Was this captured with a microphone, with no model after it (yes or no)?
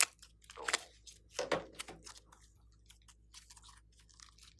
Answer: yes